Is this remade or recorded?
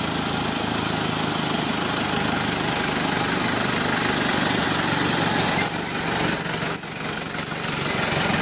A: recorded